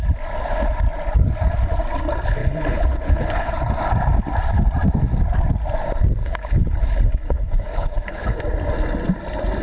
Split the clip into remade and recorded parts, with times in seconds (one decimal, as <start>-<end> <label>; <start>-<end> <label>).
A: 0.0-2.4 recorded; 2.4-3.5 remade; 3.5-6.2 recorded; 6.2-8.4 remade; 8.4-9.6 recorded